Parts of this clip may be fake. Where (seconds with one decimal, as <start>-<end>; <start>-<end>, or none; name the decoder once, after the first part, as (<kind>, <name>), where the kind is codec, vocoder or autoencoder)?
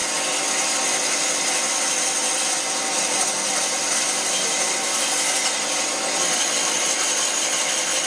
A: none